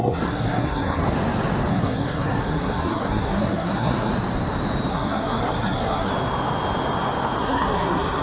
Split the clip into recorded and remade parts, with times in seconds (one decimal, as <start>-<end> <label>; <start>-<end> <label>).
0.0-1.0 remade; 1.0-1.7 recorded; 1.7-4.1 remade; 4.1-4.9 recorded; 4.9-6.1 remade; 6.1-7.4 recorded; 7.4-8.2 remade